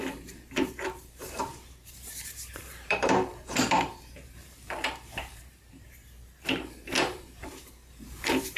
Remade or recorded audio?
remade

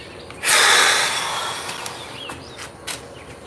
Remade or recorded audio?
recorded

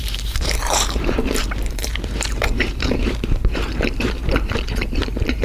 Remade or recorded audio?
remade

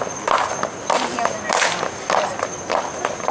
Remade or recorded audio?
recorded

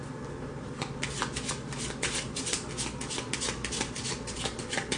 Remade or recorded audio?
recorded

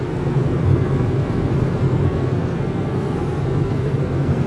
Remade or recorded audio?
remade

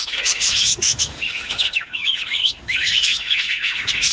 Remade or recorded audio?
remade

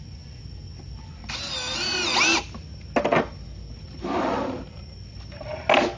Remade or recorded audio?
recorded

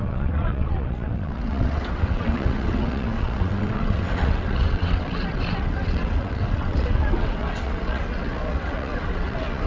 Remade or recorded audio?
remade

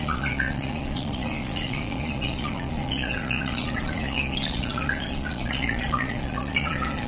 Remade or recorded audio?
remade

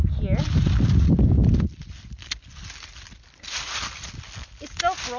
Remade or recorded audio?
recorded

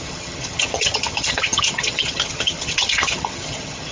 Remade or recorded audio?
remade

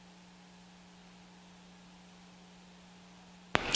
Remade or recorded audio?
recorded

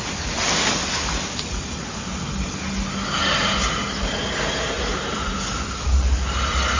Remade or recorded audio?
recorded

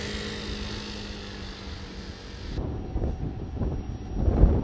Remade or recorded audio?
recorded